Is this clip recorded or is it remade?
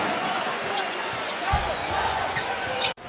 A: remade